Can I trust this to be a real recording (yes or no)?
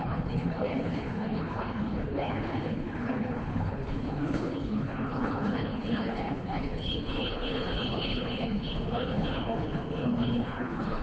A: no